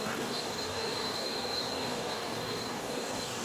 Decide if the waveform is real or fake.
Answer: fake